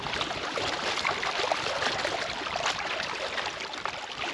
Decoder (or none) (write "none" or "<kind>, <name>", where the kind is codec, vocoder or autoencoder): vocoder, BigVGAN v2